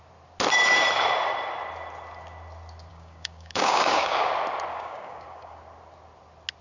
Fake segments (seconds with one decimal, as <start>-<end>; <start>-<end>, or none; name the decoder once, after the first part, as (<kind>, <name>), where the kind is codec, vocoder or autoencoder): 2.9-4.3 (codec, DAC); 4.7-5.6